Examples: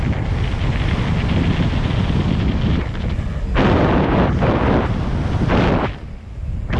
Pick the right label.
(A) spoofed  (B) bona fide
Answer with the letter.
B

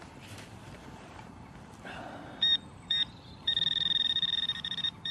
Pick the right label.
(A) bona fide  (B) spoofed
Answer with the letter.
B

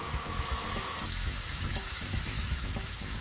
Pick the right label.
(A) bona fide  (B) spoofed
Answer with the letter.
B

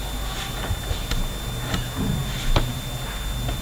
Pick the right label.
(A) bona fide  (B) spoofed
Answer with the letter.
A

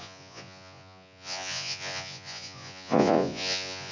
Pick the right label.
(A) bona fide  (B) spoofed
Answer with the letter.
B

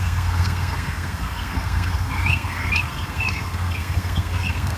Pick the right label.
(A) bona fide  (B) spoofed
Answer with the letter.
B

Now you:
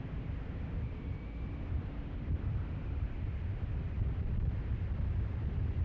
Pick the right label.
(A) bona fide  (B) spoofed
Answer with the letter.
B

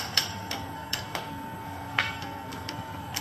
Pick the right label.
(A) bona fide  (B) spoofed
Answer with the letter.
B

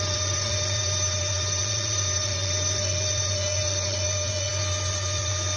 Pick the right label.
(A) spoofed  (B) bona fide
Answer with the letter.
A